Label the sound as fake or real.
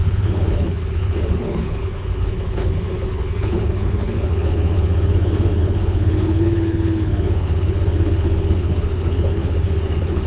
fake